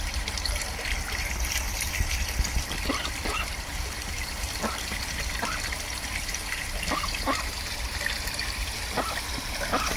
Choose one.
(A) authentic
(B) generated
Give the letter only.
B